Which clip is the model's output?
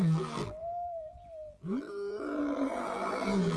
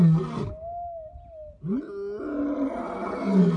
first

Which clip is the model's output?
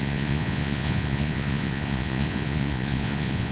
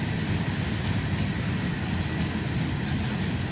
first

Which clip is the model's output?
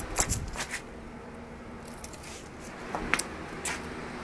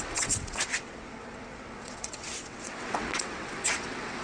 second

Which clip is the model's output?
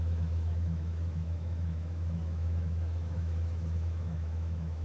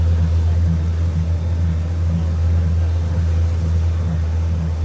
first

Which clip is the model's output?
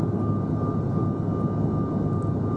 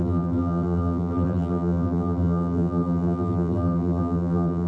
second